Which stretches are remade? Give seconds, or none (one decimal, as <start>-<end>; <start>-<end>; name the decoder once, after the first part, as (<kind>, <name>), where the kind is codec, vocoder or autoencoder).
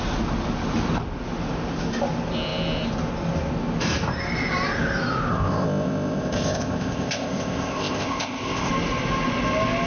5.3-8.7 (codec, ZipCodec)